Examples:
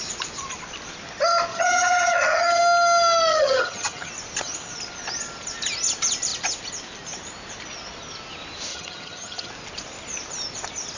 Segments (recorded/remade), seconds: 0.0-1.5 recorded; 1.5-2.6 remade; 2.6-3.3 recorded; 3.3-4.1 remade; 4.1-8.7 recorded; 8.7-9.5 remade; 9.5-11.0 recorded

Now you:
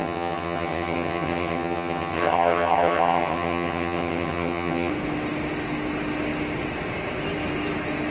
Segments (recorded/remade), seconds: 0.0-4.9 remade; 4.9-8.1 recorded

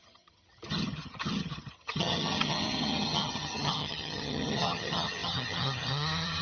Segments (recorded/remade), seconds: 0.0-6.4 remade

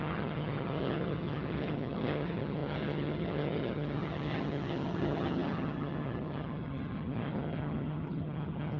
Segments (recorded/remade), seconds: 0.0-8.8 remade

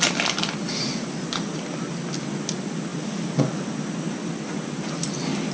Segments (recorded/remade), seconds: 0.0-5.5 recorded

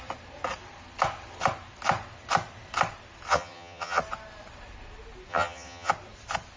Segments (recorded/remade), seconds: 0.0-3.3 recorded; 3.3-4.0 remade; 4.0-5.3 recorded; 5.3-5.9 remade; 5.9-6.6 recorded